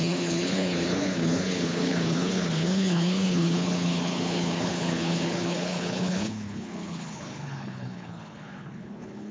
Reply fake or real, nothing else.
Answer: fake